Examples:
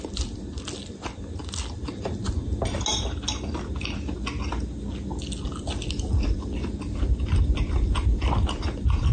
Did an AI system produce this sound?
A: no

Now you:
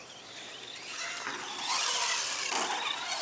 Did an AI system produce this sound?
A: yes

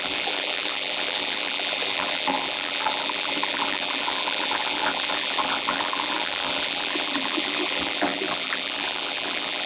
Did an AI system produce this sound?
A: yes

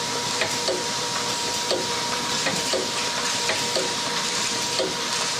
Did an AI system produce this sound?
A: yes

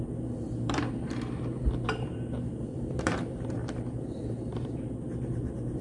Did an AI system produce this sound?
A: yes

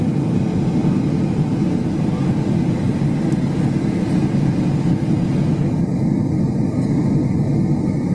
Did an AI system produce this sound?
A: no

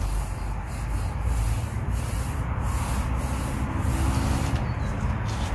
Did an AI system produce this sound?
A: no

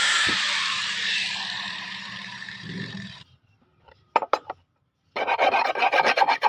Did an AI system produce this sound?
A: yes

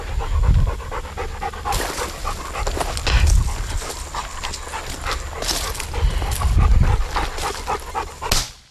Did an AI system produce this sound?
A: no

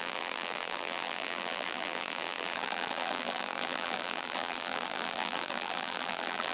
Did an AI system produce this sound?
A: yes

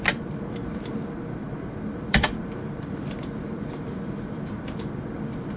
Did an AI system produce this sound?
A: yes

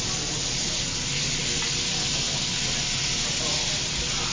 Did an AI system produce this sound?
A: no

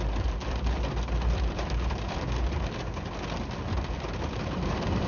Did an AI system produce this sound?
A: yes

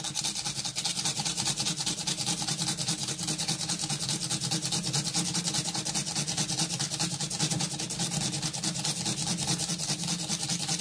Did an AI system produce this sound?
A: no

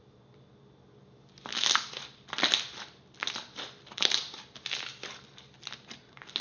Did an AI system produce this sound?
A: no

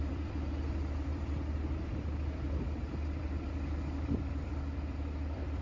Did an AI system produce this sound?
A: yes